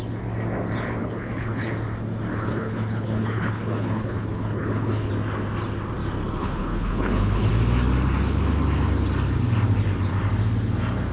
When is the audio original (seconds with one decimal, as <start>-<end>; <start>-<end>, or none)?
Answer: 0.0-1.0; 1.7-2.3; 5.1-6.4; 7.5-11.1